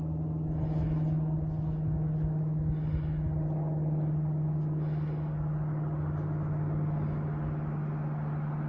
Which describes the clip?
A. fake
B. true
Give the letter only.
B